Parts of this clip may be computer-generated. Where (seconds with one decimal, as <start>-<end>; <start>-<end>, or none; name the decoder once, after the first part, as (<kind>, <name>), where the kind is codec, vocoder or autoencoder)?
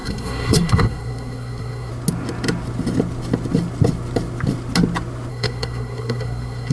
0.0-1.9 (codec, SNAC); 5.3-6.7